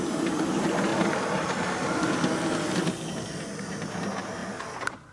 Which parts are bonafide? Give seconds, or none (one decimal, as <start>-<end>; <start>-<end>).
0.9-3.7; 4.4-5.1